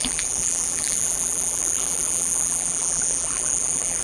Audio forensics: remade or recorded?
remade